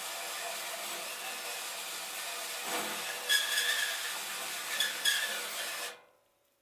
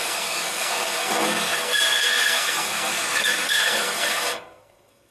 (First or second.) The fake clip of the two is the second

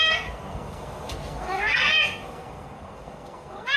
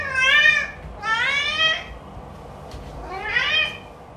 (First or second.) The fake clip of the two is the first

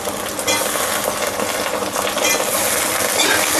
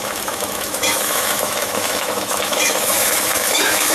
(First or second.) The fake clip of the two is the second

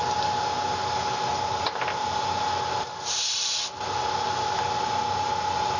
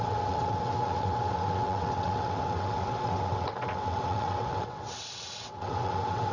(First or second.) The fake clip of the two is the second